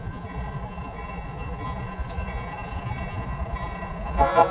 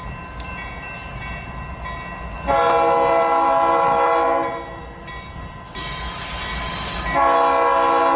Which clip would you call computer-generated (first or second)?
first